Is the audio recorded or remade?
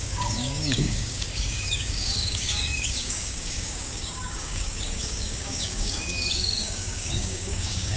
remade